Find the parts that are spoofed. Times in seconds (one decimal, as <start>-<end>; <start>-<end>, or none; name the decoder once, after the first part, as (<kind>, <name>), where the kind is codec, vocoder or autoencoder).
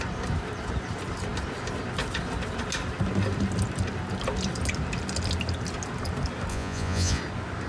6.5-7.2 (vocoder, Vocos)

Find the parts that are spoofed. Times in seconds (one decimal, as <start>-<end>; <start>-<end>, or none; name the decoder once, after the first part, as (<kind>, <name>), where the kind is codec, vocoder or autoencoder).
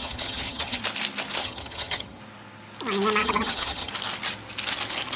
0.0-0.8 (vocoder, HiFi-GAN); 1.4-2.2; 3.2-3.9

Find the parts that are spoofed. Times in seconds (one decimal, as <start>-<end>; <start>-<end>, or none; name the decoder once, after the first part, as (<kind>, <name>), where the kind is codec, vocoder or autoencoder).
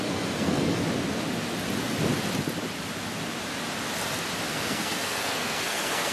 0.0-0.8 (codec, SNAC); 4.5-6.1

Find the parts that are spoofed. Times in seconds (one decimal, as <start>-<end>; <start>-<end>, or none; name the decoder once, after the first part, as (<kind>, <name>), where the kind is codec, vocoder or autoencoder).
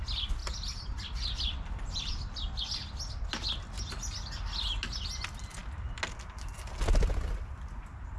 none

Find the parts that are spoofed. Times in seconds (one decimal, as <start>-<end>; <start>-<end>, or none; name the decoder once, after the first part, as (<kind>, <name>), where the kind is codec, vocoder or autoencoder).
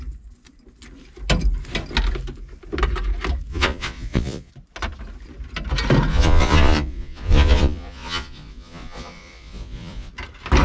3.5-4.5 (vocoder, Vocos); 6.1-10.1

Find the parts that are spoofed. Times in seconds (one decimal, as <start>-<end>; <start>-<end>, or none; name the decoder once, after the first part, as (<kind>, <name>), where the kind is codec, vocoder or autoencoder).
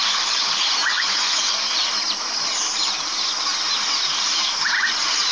0.8-1.4 (vocoder, Vocos)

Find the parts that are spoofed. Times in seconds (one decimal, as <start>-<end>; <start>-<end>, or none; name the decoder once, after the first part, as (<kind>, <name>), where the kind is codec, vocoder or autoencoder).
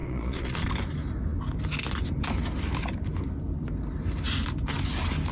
0.0-0.7 (vocoder, Vocos)